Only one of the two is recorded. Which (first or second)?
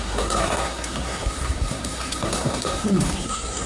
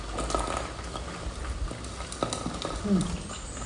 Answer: second